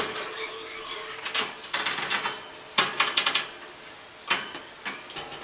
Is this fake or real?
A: real